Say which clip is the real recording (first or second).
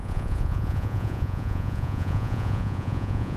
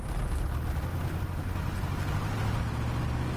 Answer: second